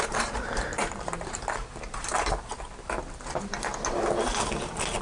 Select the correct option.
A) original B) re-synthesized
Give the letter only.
A